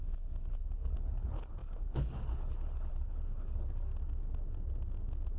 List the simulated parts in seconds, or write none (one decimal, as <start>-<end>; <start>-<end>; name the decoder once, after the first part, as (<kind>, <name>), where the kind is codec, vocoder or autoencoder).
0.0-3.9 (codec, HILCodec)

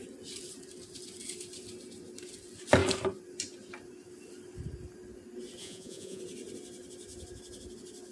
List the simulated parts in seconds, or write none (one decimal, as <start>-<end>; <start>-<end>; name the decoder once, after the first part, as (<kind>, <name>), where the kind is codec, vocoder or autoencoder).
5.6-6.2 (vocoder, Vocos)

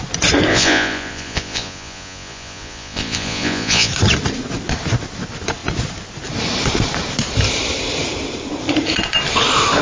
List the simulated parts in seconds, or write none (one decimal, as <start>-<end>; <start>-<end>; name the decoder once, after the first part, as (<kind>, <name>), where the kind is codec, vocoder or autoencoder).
0.5-3.9 (vocoder, Vocos)

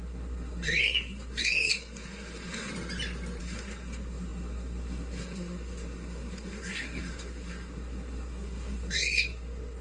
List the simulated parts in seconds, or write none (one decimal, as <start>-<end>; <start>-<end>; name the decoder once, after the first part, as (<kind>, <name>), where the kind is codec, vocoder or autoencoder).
0.0-2.7 (codec, SNAC); 3.4-9.8